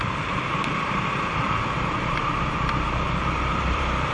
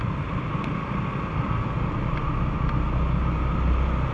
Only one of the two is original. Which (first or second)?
second